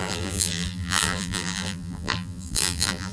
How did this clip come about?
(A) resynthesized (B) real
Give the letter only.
A